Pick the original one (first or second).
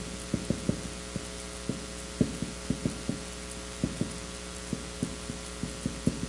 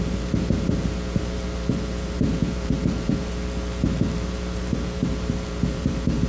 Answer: first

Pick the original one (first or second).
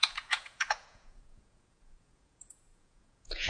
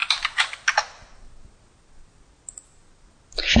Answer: second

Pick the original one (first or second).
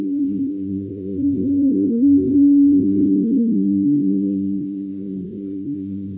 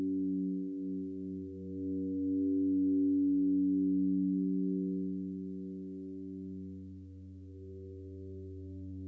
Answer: second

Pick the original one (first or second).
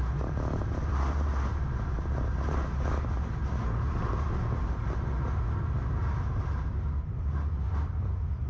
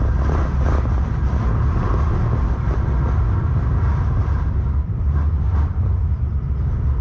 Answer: first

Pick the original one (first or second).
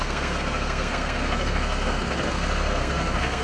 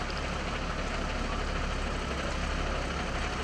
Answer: second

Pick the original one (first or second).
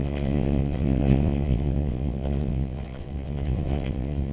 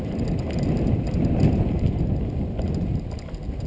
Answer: second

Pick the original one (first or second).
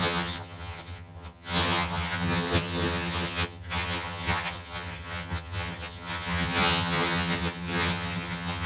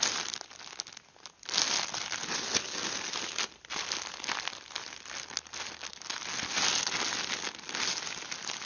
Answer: second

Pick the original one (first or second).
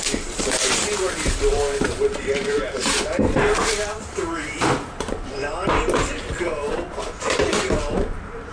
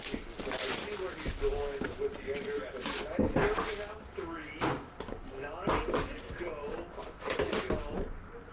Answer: second